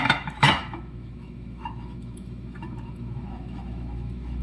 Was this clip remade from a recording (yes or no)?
yes